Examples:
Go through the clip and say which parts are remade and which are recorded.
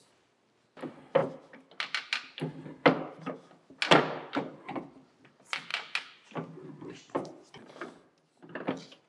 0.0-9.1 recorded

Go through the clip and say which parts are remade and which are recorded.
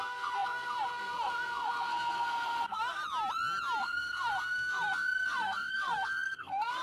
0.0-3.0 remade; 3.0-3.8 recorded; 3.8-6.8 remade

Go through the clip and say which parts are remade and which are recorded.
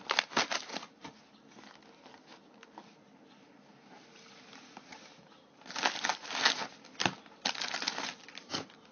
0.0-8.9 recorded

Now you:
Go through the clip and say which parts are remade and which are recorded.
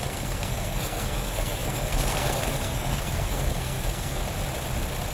0.0-4.2 remade; 4.2-5.1 recorded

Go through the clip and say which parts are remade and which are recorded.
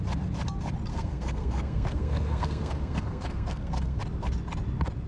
0.0-0.9 recorded; 0.9-4.0 remade; 4.0-5.1 recorded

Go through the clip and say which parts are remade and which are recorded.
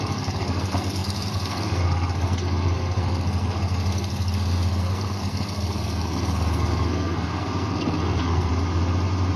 0.0-8.5 remade; 8.5-9.4 recorded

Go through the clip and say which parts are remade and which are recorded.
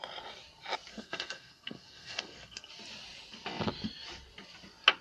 0.0-0.9 recorded; 0.9-2.7 remade; 2.7-5.0 recorded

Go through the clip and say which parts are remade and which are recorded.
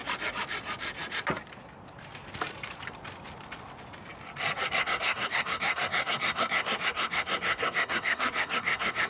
0.0-4.8 recorded; 4.8-9.1 remade